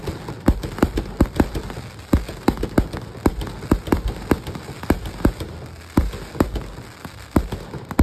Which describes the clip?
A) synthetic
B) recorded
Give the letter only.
B